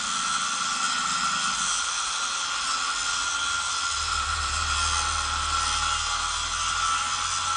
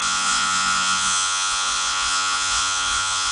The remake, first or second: second